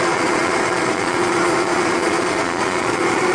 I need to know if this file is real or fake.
fake